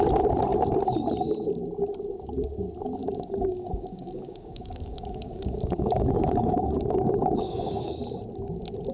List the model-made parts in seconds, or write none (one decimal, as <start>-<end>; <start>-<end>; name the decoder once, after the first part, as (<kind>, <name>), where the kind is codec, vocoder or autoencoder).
3.0-8.0 (codec, DAC)

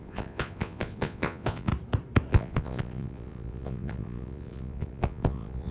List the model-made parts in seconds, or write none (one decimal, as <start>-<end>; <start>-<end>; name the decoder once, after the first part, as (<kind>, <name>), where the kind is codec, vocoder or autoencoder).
0.0-1.7 (vocoder, Vocos); 2.3-5.7